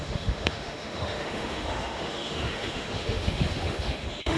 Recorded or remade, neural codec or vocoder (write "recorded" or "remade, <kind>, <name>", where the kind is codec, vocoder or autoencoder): remade, autoencoder, DAC-VAE